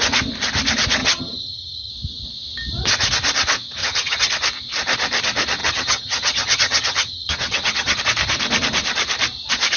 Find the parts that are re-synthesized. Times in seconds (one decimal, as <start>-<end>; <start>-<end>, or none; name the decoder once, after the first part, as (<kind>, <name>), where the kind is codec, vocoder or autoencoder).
1.0-1.9 (vocoder, HiFi-GAN); 3.8-4.3; 5.6-8.0